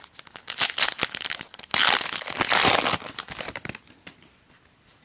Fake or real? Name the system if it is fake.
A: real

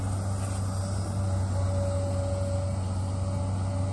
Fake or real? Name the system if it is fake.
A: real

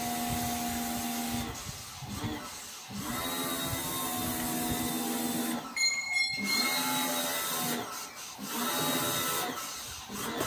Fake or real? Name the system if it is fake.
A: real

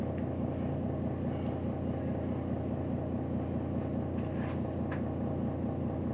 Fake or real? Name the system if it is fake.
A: real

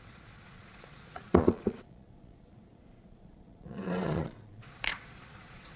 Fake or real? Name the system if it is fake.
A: fake, vocoder, Vocos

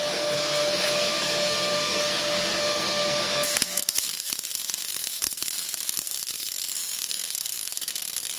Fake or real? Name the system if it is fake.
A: fake, codec, SNAC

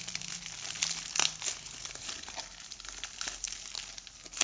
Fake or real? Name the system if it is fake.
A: real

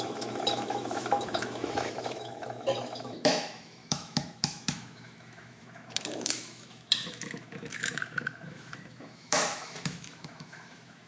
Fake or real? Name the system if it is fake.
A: fake, autoencoder, DAC-VAE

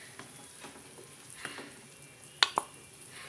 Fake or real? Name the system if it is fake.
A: real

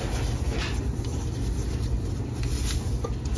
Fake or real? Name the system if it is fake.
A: real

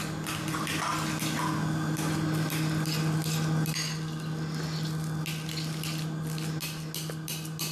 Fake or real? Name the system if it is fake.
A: real